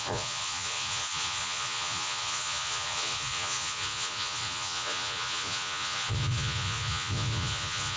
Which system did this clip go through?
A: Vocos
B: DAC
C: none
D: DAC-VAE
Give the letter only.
A